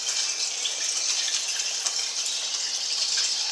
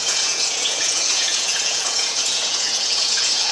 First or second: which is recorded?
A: first